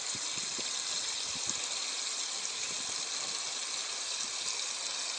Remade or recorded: recorded